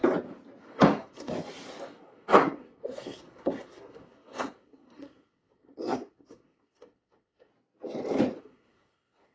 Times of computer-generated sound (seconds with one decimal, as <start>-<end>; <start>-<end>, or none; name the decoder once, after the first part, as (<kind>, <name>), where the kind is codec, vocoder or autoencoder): 0.6-1.3 (codec, SNAC); 1.9-7.5; 8.4-9.3